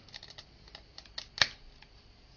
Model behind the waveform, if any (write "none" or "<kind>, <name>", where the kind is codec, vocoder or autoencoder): none